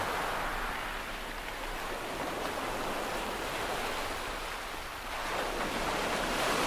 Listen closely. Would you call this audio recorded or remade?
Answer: recorded